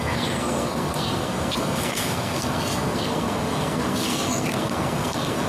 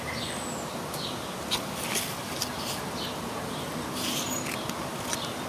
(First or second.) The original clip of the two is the second